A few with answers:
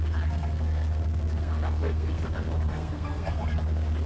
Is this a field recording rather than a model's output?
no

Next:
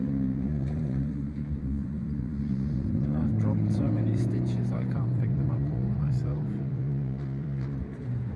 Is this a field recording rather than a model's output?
no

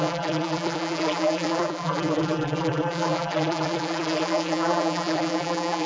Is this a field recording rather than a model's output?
no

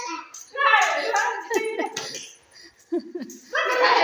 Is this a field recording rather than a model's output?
no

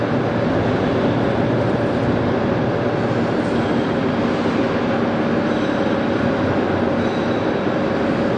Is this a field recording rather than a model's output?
yes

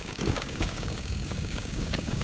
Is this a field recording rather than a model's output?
no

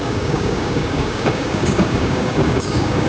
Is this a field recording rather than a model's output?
no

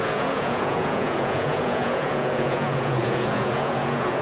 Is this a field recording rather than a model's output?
no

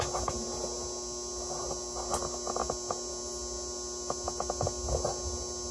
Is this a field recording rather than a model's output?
yes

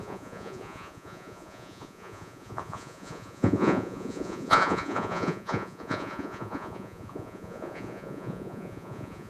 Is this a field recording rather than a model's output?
no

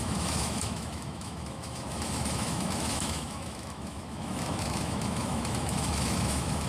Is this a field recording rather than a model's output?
no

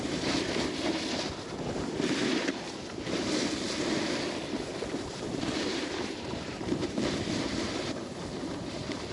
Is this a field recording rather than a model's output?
no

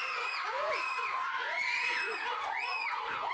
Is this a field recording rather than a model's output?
no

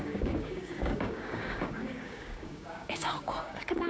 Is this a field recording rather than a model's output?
no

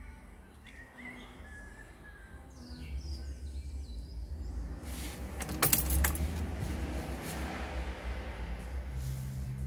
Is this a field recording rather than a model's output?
yes